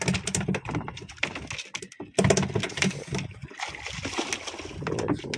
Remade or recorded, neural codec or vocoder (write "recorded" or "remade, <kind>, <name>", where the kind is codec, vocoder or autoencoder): recorded